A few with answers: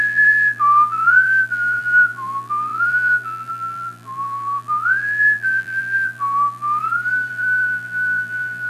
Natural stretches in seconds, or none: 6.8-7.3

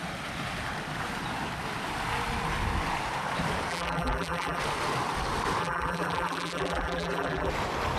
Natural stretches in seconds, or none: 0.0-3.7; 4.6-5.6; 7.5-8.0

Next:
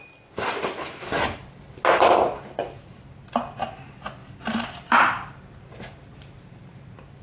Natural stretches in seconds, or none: 0.0-4.2

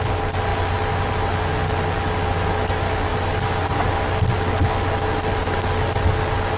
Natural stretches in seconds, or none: 0.0-6.6

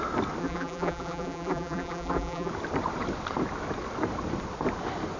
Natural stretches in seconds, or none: 0.0-0.4; 2.5-5.2

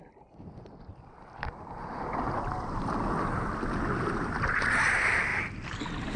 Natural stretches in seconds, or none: 3.7-6.2